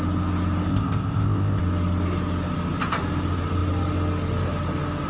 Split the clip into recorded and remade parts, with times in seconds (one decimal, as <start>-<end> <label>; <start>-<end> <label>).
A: 0.0-0.7 recorded; 0.7-1.6 remade; 1.6-5.1 recorded